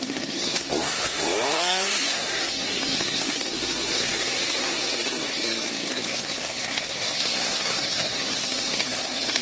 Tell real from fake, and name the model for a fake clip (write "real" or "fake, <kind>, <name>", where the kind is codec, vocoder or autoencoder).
fake, codec, SNAC